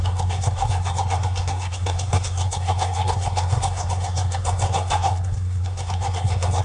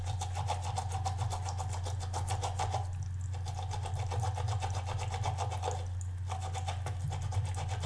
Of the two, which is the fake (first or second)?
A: first